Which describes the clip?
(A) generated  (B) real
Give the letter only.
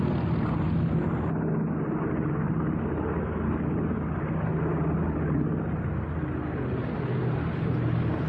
B